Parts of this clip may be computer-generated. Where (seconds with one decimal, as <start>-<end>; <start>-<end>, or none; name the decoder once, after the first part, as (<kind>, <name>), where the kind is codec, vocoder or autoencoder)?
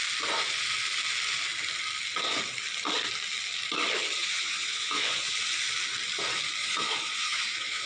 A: 4.2-5.3 (vocoder, Vocos); 6.6-7.9